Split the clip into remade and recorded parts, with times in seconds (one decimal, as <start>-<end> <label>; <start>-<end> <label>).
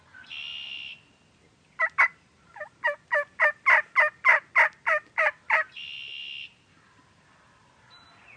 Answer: 0.0-8.4 recorded